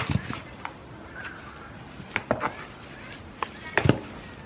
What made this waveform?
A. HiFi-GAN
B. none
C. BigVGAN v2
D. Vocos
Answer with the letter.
B